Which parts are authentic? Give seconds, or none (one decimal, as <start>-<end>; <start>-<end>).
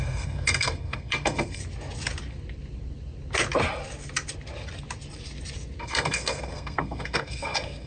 1.6-5.8